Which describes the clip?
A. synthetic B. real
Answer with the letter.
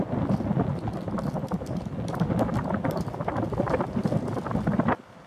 B